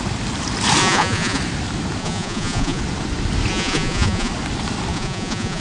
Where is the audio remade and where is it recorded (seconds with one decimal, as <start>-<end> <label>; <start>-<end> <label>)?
0.0-0.8 recorded; 0.8-1.4 remade; 1.4-2.0 recorded; 2.0-2.8 remade; 2.8-3.5 recorded; 3.5-4.3 remade; 4.3-4.9 recorded; 4.9-5.6 remade